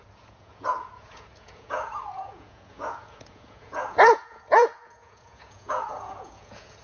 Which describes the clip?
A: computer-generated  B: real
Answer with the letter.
A